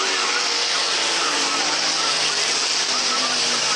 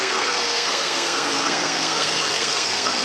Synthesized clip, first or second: second